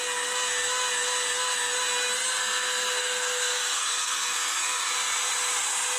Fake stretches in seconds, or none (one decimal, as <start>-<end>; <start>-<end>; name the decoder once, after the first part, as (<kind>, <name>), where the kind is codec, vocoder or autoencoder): 2.4-4.9 (codec, SNAC)